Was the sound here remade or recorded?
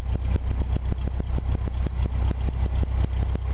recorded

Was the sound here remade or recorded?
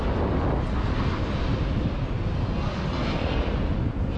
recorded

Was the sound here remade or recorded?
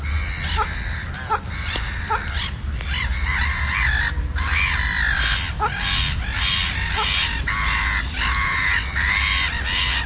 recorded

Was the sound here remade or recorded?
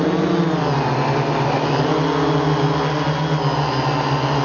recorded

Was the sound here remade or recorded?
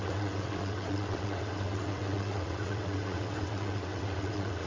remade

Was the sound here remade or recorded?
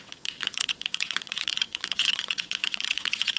remade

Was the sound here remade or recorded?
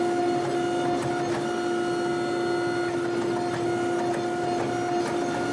recorded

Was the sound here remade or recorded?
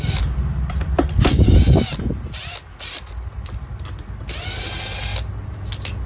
recorded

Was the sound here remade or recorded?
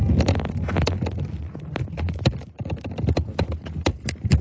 recorded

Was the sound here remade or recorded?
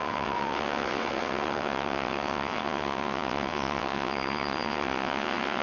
remade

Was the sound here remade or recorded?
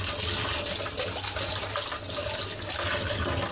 recorded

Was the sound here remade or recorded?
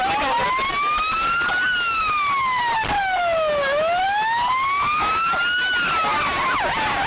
recorded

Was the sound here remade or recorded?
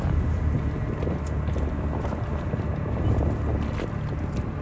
recorded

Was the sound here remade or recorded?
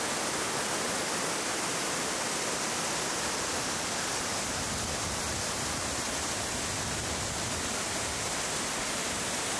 recorded